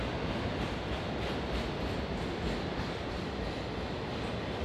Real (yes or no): yes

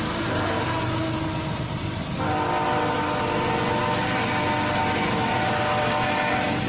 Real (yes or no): yes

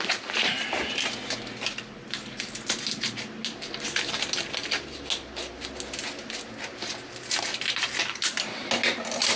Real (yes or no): yes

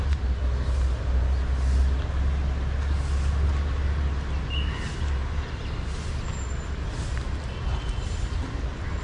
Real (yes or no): yes